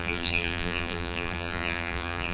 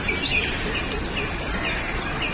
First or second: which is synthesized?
first